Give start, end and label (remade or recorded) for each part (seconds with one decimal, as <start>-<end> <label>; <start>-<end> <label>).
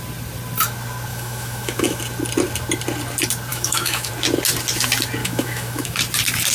0.0-1.1 recorded; 1.1-2.0 remade; 2.0-3.5 recorded; 3.5-4.1 remade; 4.1-5.2 recorded; 5.2-6.0 remade; 6.0-6.5 recorded